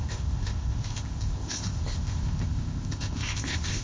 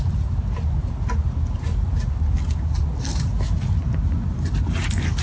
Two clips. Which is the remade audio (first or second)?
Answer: first